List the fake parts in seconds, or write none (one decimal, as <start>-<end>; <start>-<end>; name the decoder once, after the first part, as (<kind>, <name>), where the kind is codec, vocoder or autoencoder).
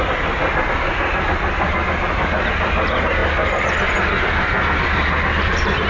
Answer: none